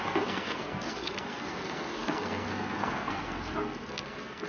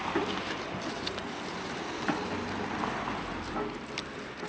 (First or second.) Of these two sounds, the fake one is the first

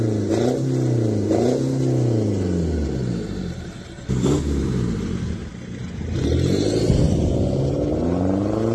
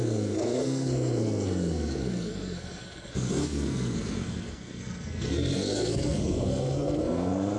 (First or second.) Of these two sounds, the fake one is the second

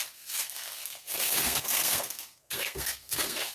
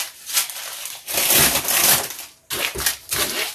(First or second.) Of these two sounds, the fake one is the first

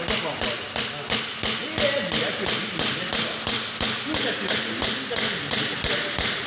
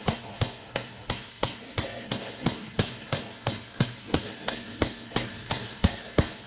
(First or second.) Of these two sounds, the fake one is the second